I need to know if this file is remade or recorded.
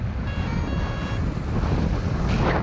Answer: recorded